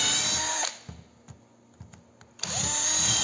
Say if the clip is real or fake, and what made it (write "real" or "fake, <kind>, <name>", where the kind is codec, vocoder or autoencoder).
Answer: real